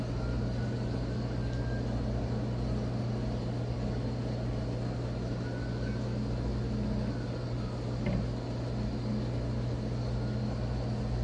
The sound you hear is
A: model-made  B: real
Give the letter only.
B